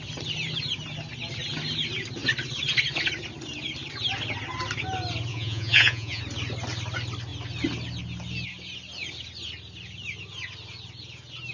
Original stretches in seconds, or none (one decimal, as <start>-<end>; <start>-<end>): 0.0-5.3; 6.2-11.5